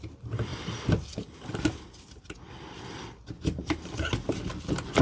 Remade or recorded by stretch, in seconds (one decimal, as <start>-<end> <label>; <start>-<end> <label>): 0.0-5.0 recorded